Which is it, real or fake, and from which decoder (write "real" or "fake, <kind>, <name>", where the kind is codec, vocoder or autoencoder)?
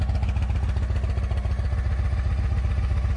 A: real